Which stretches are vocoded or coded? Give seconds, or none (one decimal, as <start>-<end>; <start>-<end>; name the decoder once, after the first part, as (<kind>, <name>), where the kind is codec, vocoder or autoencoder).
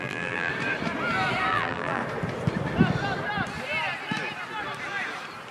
0.0-0.5 (vocoder, BigVGAN v2); 1.5-2.0